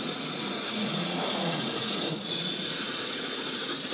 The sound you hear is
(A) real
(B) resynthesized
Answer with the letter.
B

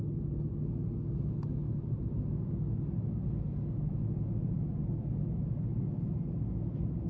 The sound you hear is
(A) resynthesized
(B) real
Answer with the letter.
B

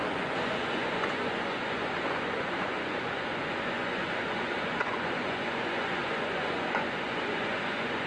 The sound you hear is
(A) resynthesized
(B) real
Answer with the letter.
A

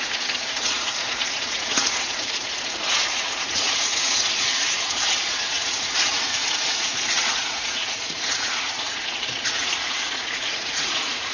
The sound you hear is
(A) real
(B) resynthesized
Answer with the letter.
B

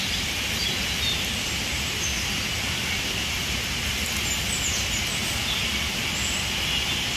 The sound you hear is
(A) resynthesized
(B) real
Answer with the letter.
B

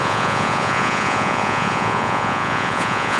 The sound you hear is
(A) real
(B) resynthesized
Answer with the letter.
B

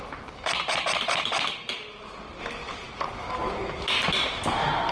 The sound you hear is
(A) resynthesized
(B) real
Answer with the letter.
B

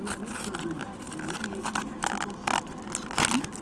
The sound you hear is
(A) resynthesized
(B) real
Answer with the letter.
B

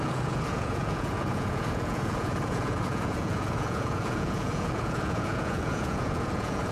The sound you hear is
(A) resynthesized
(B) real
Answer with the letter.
A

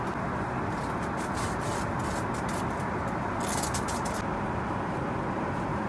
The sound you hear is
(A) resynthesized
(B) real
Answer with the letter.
B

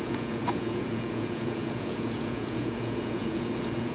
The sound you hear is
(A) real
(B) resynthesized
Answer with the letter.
B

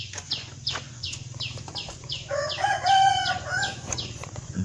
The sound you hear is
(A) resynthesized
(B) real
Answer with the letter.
A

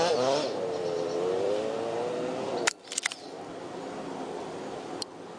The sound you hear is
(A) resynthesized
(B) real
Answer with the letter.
B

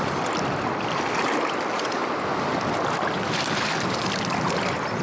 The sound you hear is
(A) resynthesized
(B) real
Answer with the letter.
B